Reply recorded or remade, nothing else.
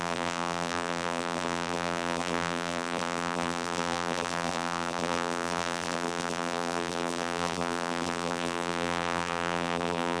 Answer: remade